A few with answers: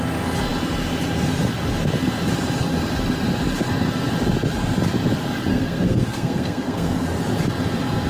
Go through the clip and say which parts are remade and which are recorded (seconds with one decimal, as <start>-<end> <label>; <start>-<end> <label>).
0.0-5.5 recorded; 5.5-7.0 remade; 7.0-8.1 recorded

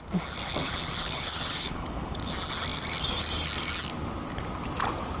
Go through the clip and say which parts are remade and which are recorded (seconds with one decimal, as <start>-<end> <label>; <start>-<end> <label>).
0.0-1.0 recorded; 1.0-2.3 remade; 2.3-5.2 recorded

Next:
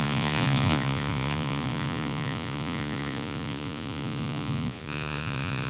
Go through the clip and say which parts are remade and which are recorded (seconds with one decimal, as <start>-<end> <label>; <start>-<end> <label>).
0.0-5.7 remade

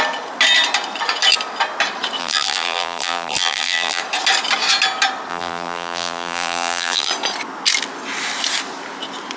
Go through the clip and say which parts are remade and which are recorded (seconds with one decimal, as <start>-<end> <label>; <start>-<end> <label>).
0.0-2.2 recorded; 2.2-4.0 remade; 4.0-5.3 recorded; 5.3-7.1 remade; 7.1-9.4 recorded

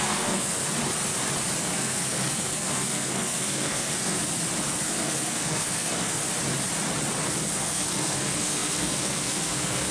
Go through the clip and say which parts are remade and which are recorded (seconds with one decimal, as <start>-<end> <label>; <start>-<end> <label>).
0.0-0.6 remade; 0.6-1.6 recorded; 1.6-4.2 remade; 4.2-4.9 recorded; 4.9-6.2 remade; 6.2-7.6 recorded; 7.6-9.9 remade

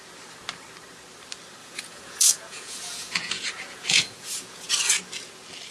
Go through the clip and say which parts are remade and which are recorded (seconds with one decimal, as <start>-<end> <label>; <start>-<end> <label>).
0.0-1.6 recorded; 1.6-4.7 remade; 4.7-5.7 recorded

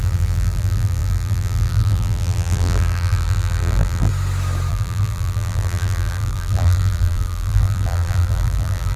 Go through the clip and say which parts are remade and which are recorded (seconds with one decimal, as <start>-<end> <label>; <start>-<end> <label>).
0.0-4.1 remade; 4.1-4.7 recorded; 4.7-9.0 remade